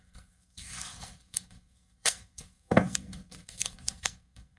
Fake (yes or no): yes